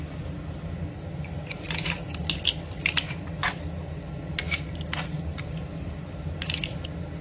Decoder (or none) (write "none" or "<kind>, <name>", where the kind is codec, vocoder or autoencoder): none